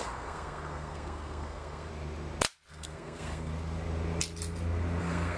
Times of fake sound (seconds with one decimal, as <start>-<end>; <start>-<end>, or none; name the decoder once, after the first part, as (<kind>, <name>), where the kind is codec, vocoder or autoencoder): 0.0-1.9 (codec, SNAC); 2.7-3.5; 5.0-5.4